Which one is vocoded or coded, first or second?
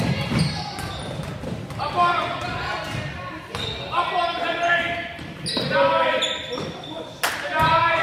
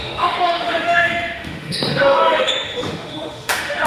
second